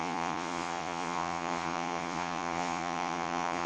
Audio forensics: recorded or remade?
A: remade